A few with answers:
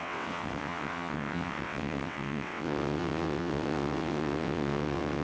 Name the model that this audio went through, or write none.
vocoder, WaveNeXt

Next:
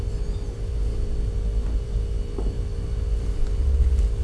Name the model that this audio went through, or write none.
none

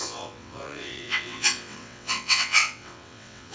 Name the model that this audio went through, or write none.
vocoder, WaveNeXt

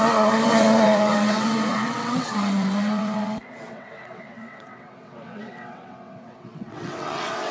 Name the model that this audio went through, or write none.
vocoder, WaveNeXt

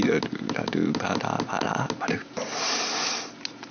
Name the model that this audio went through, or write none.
none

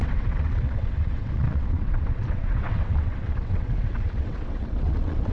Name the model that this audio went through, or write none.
vocoder, WaveNeXt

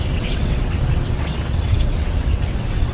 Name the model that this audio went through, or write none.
vocoder, WaveNeXt